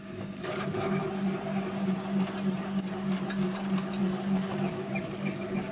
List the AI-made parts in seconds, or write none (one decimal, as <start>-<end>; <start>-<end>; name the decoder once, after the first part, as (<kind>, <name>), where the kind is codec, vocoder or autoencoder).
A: 0.0-1.0 (codec, DAC); 4.0-5.7